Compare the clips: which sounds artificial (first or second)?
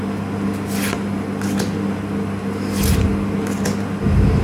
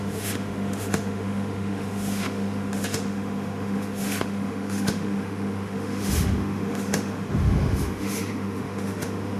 second